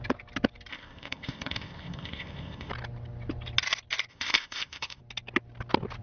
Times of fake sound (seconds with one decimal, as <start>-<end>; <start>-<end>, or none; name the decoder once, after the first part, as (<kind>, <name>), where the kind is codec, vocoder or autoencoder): 0.7-2.7 (codec, ZipCodec); 4.1-5.0

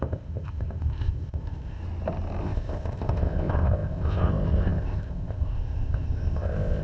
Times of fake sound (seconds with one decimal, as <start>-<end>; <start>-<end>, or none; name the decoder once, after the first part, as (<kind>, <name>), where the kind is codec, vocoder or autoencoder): 0.0-1.8 (codec, ZipCodec); 2.4-6.8

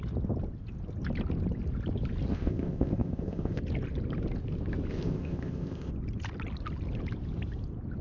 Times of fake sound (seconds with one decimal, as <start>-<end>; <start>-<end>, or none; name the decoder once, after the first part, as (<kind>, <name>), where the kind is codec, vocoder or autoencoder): 2.3-3.6 (codec, ZipCodec); 4.9-5.9

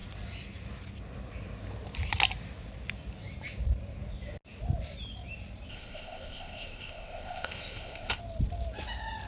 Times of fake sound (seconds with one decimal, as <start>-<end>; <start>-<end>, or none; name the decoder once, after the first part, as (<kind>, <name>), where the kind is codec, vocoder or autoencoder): 5.7-8.2 (codec, ZipCodec)

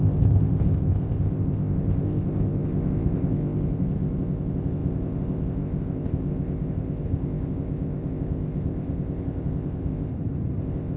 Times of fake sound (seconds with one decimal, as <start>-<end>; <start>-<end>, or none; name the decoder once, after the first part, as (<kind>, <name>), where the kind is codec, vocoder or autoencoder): 0.0-10.1 (codec, ZipCodec); 10.6-11.0

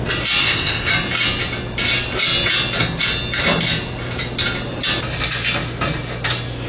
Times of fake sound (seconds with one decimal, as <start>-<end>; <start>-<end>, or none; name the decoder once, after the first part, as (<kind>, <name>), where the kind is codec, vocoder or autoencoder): 0.4-0.9 (codec, ZipCodec)